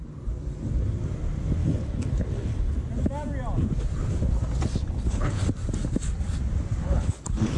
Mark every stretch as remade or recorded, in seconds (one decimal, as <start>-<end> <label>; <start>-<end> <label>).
0.0-1.6 recorded; 1.6-2.7 remade; 2.7-4.8 recorded; 4.8-5.4 remade; 5.4-6.8 recorded; 6.8-7.6 remade